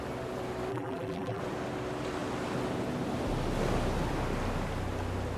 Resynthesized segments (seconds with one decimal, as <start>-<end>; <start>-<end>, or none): 0.7-1.4